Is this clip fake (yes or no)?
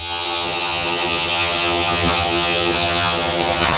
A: yes